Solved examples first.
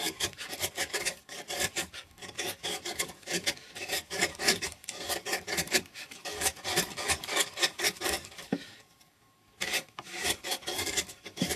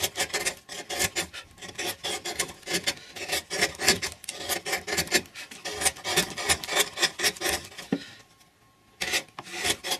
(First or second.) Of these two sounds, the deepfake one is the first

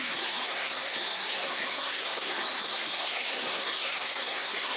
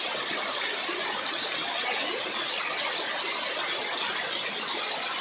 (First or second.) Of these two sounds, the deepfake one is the first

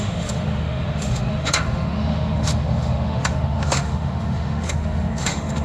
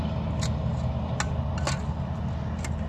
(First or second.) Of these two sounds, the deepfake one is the first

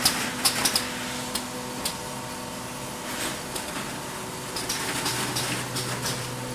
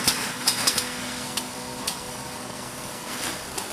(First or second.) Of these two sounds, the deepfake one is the second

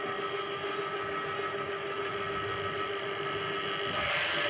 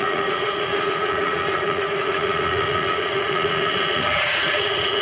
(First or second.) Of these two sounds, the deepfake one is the second